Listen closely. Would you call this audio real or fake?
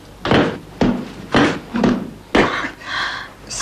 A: real